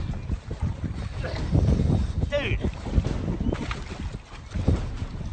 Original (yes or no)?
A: yes